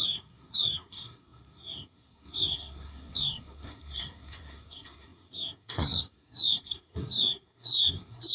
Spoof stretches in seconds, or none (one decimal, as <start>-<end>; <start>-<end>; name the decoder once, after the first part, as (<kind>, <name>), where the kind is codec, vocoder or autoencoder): 0.0-8.3 (codec, SNAC)